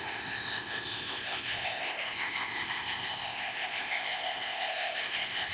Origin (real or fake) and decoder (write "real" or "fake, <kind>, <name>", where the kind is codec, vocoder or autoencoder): fake, codec, ZipCodec